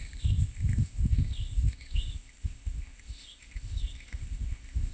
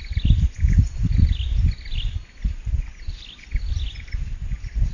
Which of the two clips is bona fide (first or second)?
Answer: second